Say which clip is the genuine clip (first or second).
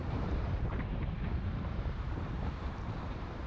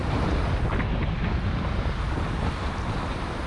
second